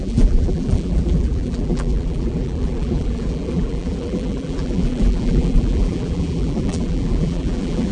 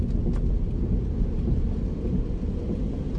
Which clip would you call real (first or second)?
second